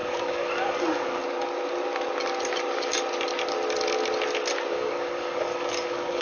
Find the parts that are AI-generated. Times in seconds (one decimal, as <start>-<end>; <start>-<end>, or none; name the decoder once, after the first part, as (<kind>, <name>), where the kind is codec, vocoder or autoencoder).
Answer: 0.0-1.2 (codec, DAC); 4.7-6.2